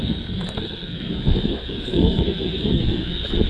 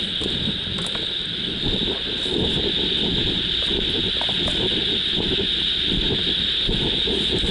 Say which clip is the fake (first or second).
first